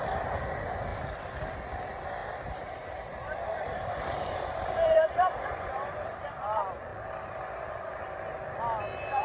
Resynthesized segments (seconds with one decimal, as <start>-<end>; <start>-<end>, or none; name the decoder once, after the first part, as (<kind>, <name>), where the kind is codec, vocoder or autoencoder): 0.9-1.4 (vocoder, BigVGAN v2); 2.2-6.3